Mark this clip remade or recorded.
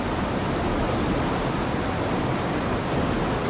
recorded